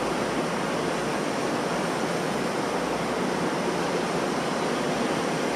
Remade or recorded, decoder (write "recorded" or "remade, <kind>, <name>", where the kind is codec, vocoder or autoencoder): recorded